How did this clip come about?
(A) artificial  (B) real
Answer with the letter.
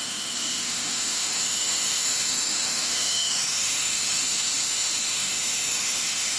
A